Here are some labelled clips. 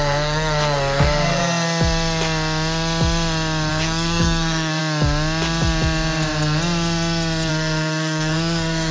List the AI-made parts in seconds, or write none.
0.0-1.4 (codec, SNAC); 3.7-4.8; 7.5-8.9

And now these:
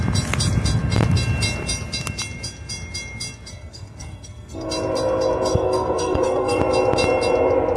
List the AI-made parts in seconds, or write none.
3.5-4.7 (codec, SNAC); 5.5-6.6

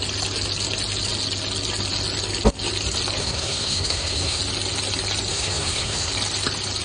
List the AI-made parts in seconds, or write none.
3.2-4.4 (codec, SNAC); 5.3-6.1

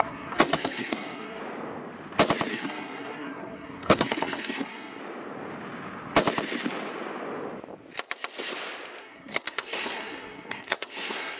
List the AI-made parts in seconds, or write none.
0.0-1.4 (codec, SNAC); 2.5-5.0; 9.0-11.4

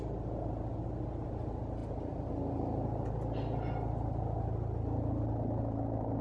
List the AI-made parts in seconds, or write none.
none

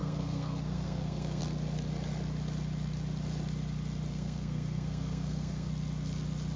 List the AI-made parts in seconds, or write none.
0.0-1.4 (codec, SNAC); 4.1-5.7

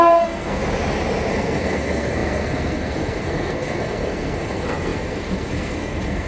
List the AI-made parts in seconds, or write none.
0.0-0.6 (codec, SNAC); 1.3-6.3

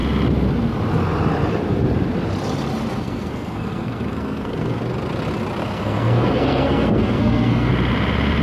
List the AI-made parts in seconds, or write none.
2.9-4.8 (codec, SNAC); 5.6-7.7